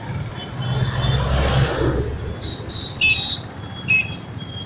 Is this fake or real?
real